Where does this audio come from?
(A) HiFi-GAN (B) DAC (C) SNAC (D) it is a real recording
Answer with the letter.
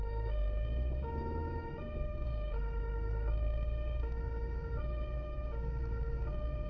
B